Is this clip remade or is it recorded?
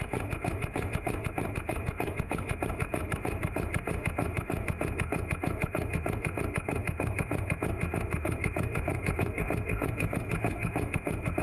remade